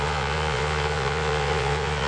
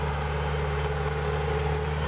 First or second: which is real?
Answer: second